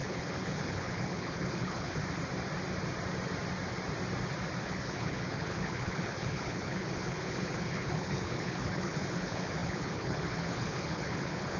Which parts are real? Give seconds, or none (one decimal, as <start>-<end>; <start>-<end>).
2.0-4.6